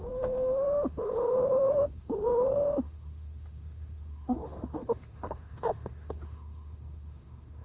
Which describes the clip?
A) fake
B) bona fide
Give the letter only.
A